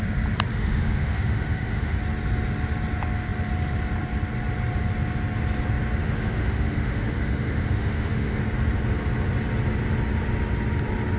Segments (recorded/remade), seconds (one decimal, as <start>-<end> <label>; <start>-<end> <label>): 0.0-0.5 recorded; 0.5-2.0 remade; 2.0-6.0 recorded; 6.0-8.4 remade; 8.4-11.2 recorded